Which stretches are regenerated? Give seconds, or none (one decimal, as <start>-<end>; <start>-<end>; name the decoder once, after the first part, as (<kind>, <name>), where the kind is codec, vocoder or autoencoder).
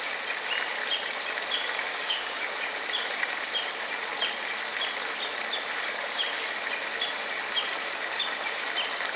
1.9-2.4 (codec, DAC)